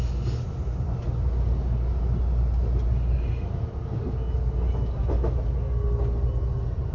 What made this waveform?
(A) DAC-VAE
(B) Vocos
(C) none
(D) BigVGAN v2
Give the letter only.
C